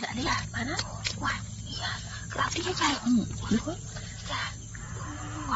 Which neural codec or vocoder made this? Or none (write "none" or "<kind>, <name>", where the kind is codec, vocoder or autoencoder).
none